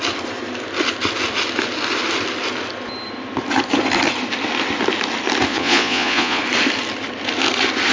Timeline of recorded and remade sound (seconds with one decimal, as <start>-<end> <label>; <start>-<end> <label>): 0.0-5.5 recorded; 5.5-6.4 remade; 6.4-7.9 recorded